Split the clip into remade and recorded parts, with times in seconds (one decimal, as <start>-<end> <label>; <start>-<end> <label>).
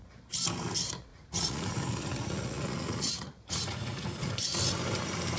0.0-1.1 recorded; 1.1-4.3 remade; 4.3-5.4 recorded